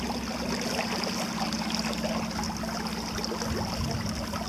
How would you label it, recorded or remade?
recorded